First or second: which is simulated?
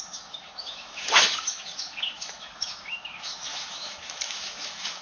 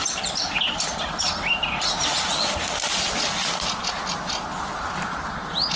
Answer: first